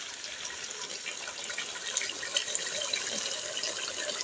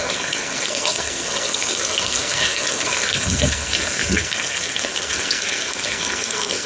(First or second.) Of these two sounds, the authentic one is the first